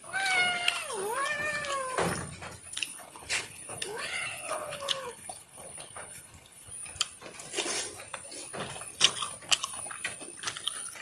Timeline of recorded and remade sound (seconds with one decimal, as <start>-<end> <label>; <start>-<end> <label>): 0.0-2.9 recorded; 2.9-6.7 remade; 6.7-11.0 recorded